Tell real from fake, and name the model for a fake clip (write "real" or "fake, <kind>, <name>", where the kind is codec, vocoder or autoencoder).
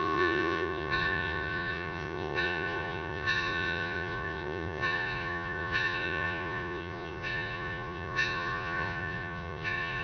fake, vocoder, Vocos